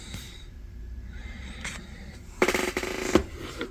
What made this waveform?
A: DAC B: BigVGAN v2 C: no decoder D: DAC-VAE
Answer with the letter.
B